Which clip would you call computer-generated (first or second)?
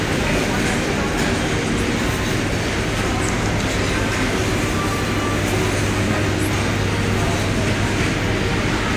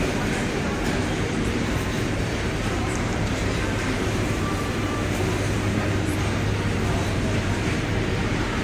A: second